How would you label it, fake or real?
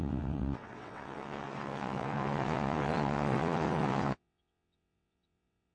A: fake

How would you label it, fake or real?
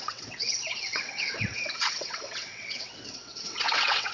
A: fake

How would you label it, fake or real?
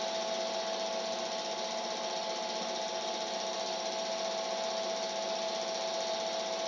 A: real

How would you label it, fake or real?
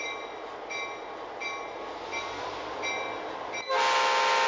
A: real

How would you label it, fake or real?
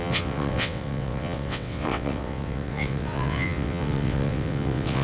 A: fake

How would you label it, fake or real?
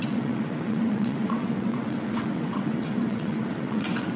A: fake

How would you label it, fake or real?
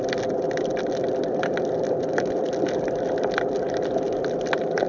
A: real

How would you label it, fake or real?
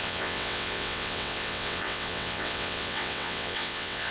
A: fake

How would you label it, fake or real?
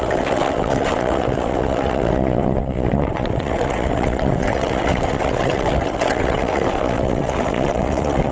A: fake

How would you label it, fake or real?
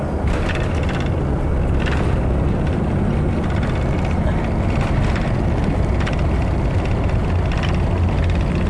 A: real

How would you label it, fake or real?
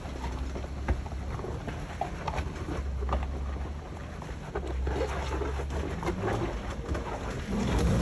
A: real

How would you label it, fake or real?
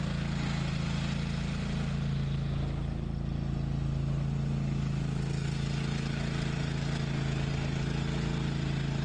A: real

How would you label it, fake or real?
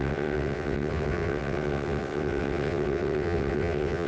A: fake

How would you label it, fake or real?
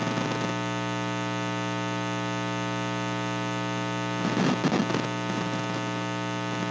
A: real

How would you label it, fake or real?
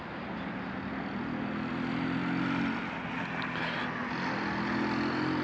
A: real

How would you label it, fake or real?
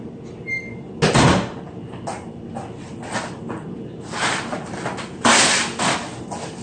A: real